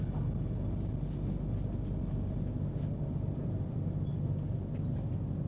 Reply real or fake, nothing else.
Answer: real